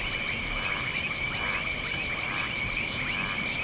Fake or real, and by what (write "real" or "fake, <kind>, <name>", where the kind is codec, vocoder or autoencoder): real